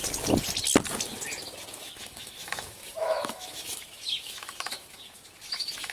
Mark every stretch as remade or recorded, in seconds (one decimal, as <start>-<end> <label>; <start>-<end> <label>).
0.0-1.7 recorded; 1.7-5.9 remade